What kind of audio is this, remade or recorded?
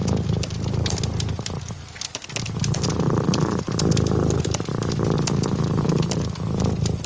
recorded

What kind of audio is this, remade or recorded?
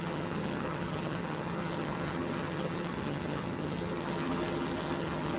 remade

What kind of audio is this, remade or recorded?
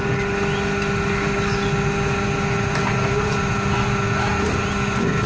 recorded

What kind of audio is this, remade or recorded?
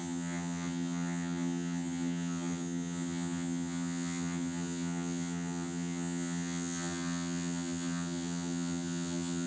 remade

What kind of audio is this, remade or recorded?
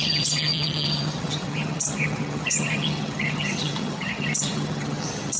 remade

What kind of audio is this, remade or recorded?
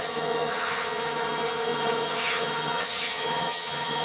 remade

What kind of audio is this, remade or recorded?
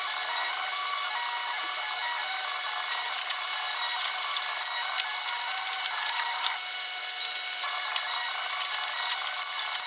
recorded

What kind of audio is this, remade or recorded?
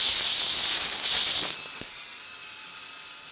recorded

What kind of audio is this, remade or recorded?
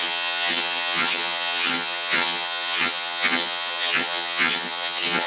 remade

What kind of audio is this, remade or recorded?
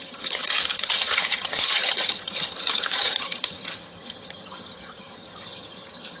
remade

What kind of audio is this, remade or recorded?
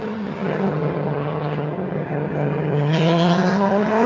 remade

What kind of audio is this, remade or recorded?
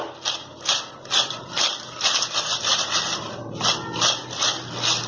recorded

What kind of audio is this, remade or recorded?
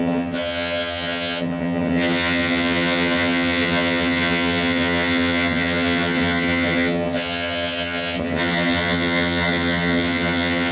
remade